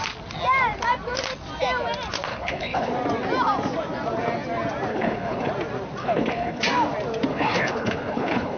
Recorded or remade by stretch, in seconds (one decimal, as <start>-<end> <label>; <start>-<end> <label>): 0.0-2.3 recorded; 2.3-2.9 remade; 2.9-4.9 recorded; 4.9-5.5 remade; 5.5-6.0 recorded; 6.0-6.6 remade; 6.6-7.3 recorded; 7.3-8.6 remade